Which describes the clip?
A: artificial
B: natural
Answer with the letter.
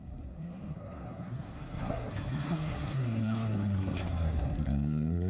A